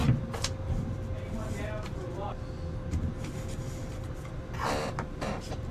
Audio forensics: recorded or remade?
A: recorded